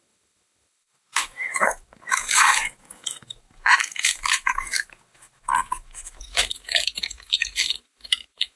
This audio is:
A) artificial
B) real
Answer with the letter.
A